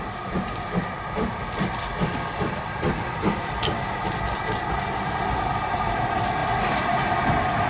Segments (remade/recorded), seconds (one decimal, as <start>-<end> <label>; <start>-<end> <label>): 0.0-7.7 recorded